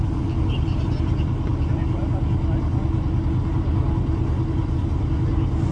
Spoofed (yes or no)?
no